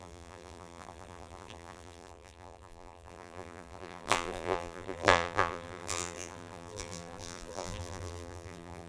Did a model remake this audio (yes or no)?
yes